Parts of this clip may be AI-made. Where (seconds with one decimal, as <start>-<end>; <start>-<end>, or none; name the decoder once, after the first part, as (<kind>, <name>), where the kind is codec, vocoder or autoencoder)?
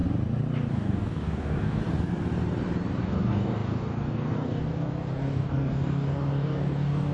0.7-1.8 (codec, DAC); 3.0-7.1